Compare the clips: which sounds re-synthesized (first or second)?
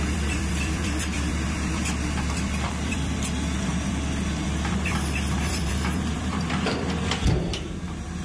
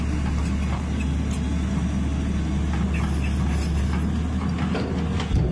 first